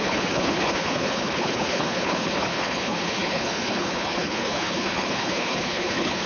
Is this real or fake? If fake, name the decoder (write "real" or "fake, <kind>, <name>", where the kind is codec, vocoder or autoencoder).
fake, codec, HILCodec